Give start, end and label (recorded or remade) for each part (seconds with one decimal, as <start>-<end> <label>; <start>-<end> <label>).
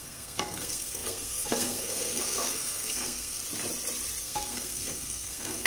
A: 0.0-3.4 remade; 3.4-4.2 recorded; 4.2-5.7 remade